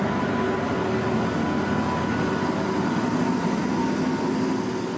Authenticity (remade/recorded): recorded